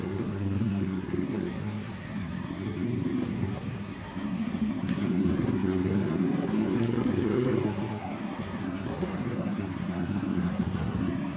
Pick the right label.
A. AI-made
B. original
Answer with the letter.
A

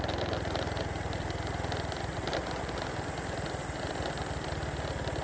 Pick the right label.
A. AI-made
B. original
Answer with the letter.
B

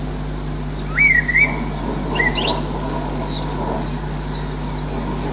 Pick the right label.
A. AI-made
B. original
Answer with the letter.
B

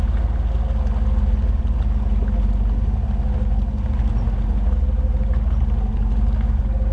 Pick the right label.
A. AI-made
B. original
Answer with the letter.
B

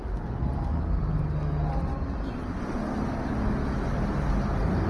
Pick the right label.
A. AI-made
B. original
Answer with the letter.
B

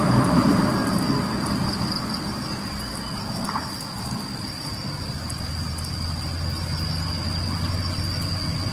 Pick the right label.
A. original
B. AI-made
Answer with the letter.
A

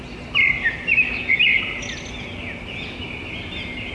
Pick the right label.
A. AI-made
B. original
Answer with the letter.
B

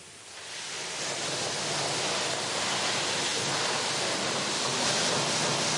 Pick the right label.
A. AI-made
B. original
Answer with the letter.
B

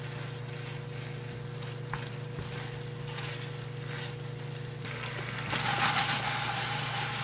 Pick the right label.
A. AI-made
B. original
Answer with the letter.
B